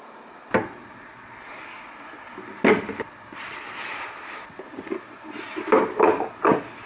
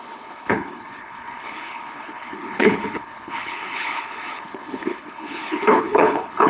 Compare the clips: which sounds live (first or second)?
first